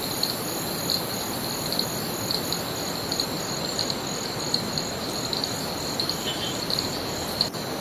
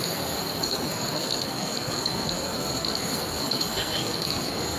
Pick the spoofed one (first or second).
second